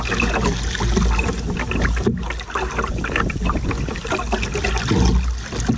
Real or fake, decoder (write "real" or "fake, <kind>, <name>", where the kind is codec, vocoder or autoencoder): real